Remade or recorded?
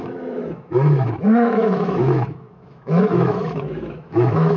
remade